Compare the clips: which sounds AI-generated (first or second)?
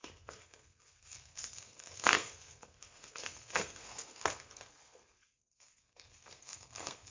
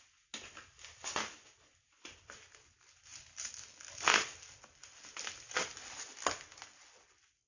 first